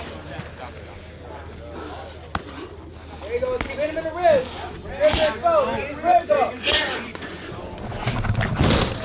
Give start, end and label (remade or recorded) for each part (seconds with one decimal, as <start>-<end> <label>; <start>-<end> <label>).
0.0-6.1 recorded; 6.1-8.1 remade; 8.1-9.0 recorded